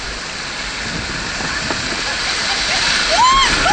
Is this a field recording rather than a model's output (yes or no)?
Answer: yes